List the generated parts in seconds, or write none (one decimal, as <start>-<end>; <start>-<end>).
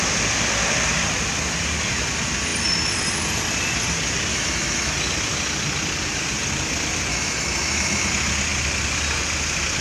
4.3-4.9; 7.1-8.1